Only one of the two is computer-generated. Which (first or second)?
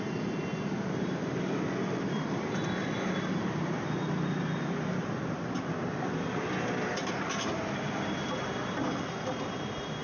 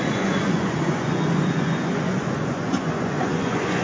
second